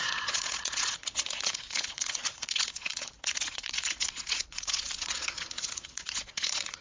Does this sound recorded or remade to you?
remade